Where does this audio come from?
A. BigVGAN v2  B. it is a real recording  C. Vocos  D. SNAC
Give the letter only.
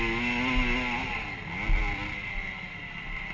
B